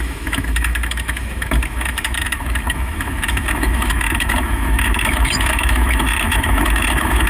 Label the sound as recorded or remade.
remade